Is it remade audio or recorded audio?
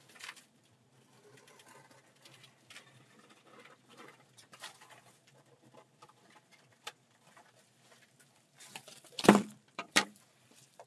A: remade